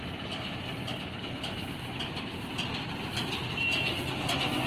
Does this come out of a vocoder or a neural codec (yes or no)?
no